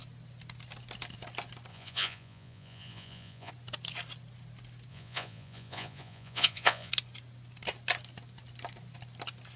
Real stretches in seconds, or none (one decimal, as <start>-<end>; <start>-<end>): 0.0-1.7; 3.5-4.9; 6.9-9.6